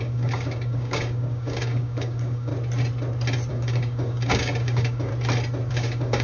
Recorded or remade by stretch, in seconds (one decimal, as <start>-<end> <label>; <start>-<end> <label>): 0.0-2.5 remade; 2.5-3.5 recorded; 3.5-5.1 remade; 5.1-5.7 recorded; 5.7-6.2 remade